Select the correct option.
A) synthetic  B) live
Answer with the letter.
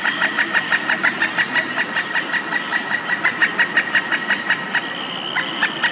B